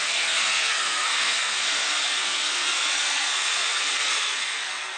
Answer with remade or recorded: remade